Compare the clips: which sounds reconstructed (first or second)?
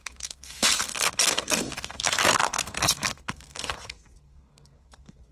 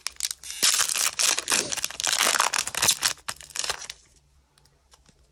first